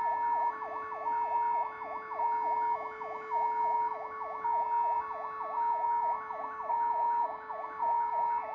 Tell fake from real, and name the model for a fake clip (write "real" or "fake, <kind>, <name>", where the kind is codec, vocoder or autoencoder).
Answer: real